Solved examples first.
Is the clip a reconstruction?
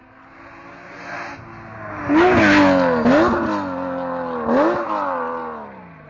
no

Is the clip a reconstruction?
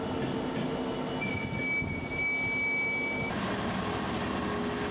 no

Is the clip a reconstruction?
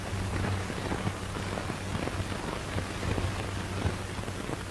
no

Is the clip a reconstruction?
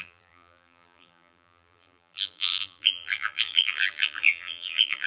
yes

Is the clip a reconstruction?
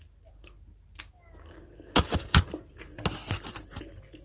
no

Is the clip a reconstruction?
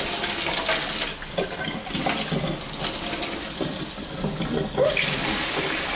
no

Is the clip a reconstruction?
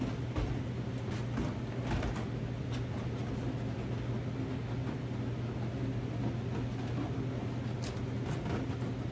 no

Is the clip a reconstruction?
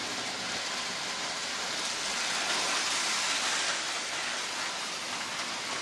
no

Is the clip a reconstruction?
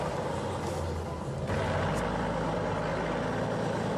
no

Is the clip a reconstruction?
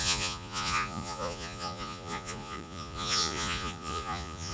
yes